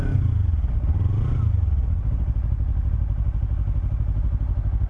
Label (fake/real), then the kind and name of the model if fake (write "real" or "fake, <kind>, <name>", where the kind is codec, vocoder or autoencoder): real